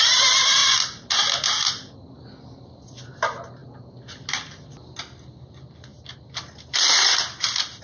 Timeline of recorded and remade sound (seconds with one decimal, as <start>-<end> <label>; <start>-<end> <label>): 0.0-7.8 recorded